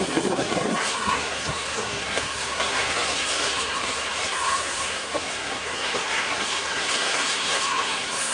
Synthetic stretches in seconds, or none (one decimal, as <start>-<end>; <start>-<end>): 0.0-8.3